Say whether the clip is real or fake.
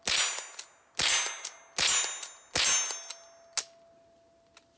real